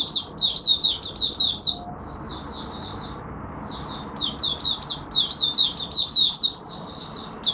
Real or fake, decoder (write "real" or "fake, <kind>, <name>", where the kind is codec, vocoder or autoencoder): real